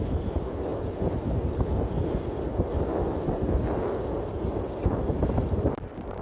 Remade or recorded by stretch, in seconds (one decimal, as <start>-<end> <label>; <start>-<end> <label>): 0.0-6.2 recorded